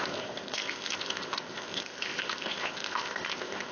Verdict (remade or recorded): remade